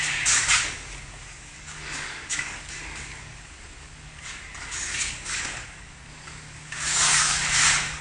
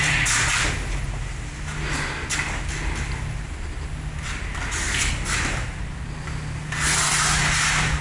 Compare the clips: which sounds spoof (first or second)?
first